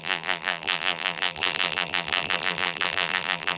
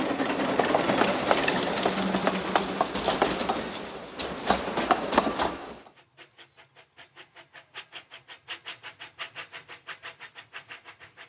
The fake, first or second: first